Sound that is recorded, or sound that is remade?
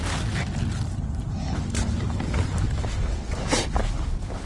recorded